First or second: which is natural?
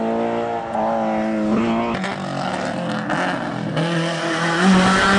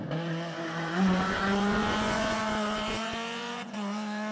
first